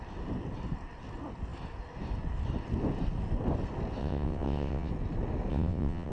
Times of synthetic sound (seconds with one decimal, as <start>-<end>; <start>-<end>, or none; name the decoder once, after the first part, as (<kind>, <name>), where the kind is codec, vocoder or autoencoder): 4.0-4.9 (vocoder, WaveNeXt); 5.5-6.1